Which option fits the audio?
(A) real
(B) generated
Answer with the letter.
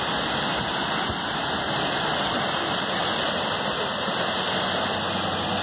A